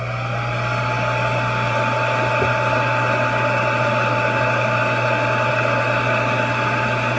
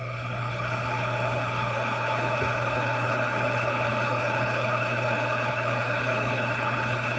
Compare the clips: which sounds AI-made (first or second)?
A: second